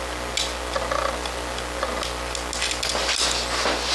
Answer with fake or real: real